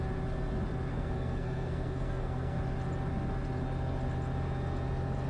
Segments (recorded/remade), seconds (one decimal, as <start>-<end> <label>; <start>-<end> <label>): 0.0-0.9 recorded; 0.9-2.6 remade; 2.6-5.3 recorded